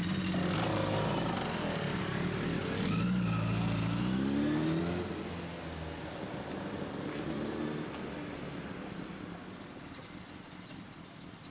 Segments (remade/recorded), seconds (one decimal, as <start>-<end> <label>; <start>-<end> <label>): 0.0-11.5 recorded